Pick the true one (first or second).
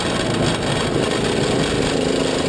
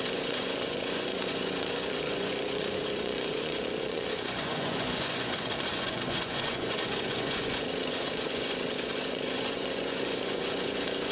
first